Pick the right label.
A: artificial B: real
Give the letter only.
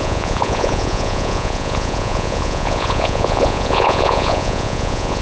A